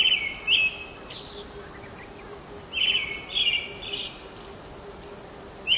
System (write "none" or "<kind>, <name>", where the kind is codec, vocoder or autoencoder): none